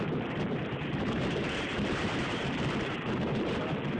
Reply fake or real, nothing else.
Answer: fake